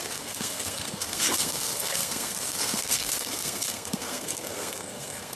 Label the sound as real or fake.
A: fake